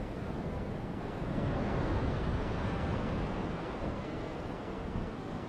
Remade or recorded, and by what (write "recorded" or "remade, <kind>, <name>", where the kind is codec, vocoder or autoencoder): remade, codec, SNAC